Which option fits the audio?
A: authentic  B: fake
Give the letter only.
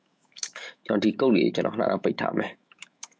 B